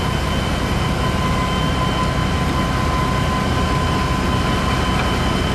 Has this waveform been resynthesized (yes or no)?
no